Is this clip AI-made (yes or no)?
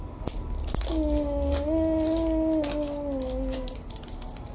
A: no